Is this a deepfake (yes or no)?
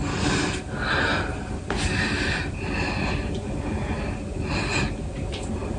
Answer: no